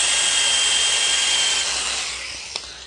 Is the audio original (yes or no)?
yes